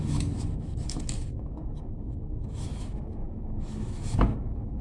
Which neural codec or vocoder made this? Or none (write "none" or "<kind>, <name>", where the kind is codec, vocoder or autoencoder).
autoencoder, DAC-VAE